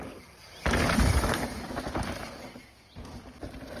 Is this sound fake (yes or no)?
no